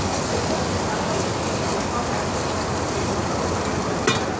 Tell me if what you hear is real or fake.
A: real